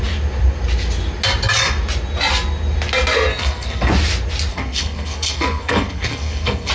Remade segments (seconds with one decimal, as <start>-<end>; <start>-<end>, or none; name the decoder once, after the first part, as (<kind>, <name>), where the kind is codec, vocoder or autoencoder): 3.3-3.9 (codec, SNAC); 4.5-6.7